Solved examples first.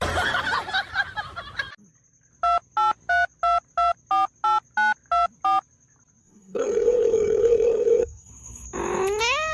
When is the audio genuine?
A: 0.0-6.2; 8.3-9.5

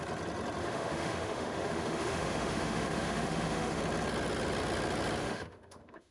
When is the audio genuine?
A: 0.0-0.6; 3.8-5.2